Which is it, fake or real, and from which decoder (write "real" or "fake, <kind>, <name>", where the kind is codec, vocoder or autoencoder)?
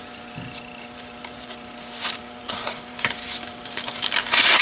fake, vocoder, BigVGAN v2